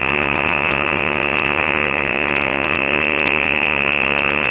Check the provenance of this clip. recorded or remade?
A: remade